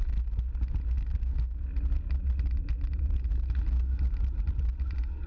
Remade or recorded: recorded